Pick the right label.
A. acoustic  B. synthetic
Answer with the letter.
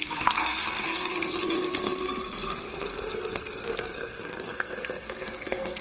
B